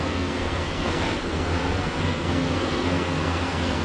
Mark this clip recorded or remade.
remade